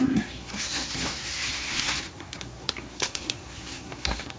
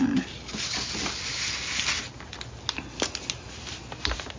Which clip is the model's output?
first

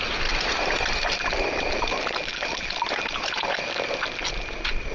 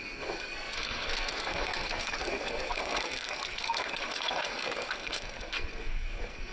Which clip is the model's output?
second